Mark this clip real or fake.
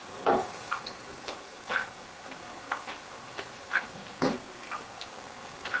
fake